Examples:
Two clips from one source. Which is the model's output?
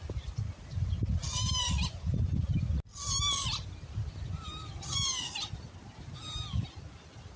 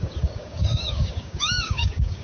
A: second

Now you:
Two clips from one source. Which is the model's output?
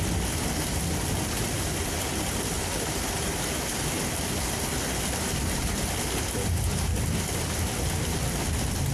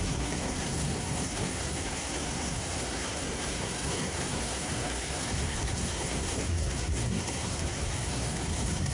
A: second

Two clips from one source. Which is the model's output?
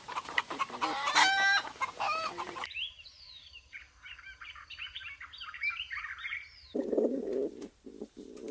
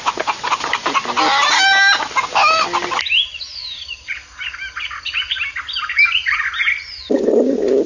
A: first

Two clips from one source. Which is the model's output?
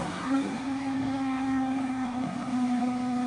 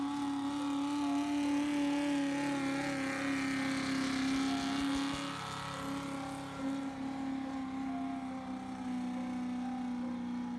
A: first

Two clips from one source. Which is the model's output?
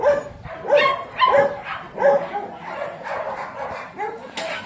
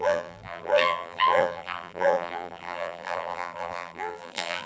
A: second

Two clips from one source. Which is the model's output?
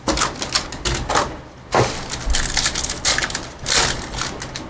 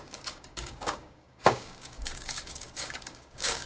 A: second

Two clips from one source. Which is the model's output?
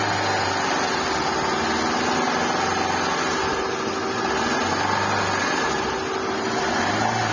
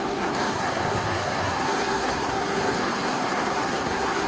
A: second